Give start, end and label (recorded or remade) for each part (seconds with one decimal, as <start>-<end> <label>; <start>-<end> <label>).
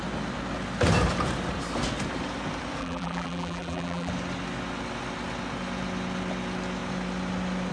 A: 0.0-2.8 recorded; 2.8-4.1 remade; 4.1-7.7 recorded